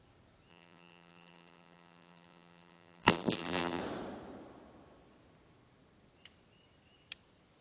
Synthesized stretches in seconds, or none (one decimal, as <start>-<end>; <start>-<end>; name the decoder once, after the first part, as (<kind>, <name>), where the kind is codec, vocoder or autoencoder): 0.5-3.8 (vocoder, BigVGAN v2)